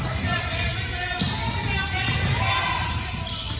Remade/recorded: recorded